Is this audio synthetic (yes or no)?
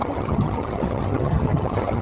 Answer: yes